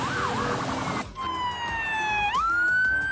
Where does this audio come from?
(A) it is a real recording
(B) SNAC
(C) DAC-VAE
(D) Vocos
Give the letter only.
A